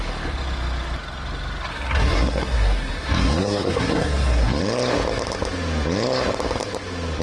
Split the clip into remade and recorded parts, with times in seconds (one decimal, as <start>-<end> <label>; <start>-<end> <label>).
0.0-1.7 recorded; 1.7-4.6 remade; 4.6-7.2 recorded